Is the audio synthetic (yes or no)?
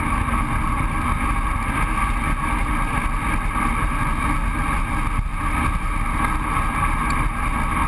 no